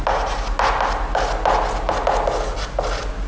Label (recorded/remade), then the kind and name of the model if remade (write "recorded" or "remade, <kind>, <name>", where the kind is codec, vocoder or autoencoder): recorded